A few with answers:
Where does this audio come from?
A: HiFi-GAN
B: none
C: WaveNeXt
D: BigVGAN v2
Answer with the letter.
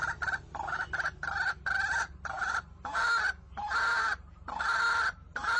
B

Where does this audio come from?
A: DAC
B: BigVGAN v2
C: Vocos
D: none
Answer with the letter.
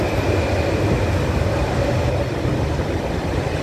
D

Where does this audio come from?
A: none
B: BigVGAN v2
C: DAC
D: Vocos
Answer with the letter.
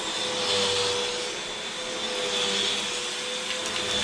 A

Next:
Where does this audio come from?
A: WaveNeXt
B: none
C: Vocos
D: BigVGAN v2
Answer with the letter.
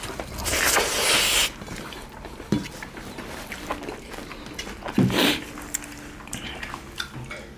B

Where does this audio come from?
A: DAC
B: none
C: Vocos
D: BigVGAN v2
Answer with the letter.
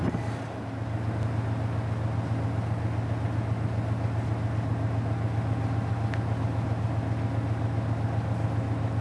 B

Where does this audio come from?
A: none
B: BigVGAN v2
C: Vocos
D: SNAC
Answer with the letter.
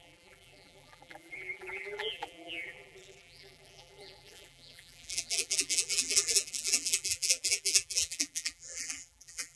B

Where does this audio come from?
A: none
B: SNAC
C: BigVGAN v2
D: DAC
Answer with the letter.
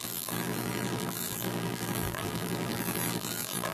C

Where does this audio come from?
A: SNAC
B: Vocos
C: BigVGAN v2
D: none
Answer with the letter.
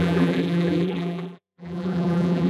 C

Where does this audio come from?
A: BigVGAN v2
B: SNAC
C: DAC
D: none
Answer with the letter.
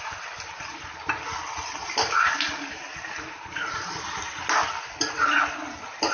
D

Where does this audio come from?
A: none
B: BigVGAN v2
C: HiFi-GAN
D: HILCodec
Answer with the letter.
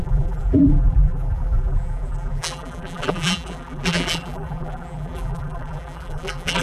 B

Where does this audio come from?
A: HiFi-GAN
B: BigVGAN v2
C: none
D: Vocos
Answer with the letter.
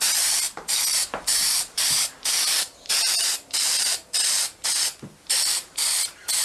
B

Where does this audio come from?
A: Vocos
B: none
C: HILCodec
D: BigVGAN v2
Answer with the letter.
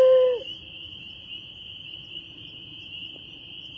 D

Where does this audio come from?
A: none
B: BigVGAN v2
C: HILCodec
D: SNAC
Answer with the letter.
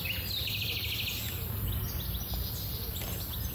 A